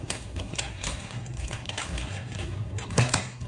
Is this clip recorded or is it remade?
remade